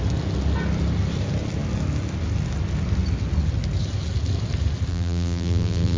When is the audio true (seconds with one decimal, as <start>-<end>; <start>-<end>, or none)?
0.0-4.9